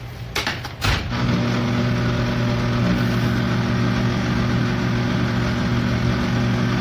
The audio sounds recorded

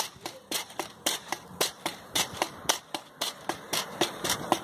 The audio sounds remade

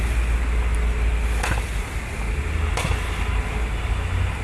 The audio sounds recorded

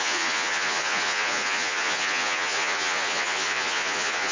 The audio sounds remade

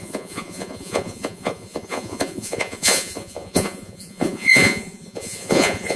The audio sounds remade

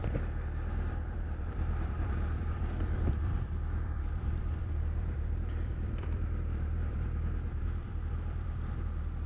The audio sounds remade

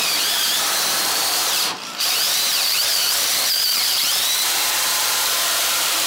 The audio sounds remade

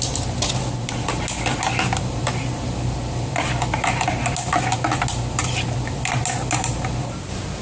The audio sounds recorded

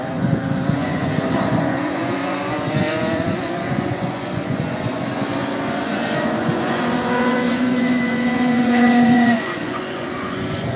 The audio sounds remade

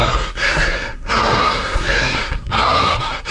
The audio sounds remade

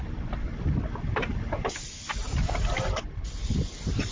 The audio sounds recorded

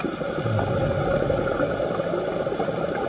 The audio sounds recorded